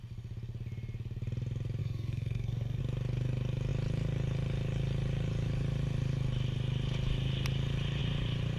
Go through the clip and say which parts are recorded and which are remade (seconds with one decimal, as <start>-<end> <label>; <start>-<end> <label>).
0.0-1.8 recorded; 1.8-2.8 remade; 2.8-8.6 recorded